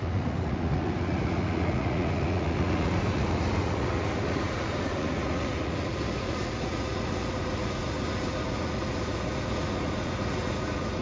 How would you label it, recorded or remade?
remade